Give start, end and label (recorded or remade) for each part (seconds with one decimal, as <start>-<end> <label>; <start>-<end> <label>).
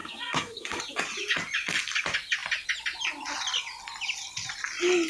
0.0-0.8 remade; 0.8-5.1 recorded